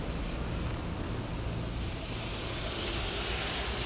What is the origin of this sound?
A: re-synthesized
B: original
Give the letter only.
B